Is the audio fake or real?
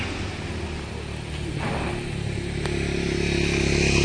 real